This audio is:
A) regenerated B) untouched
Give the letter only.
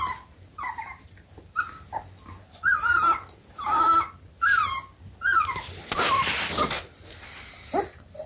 B